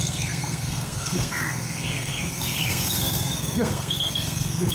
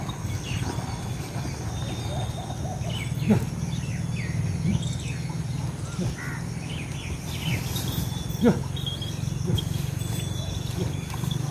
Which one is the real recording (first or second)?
second